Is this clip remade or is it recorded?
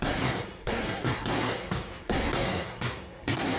remade